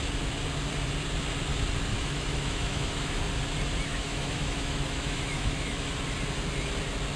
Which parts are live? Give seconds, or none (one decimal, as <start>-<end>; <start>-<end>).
0.0-1.9; 3.2-3.9; 5.9-7.2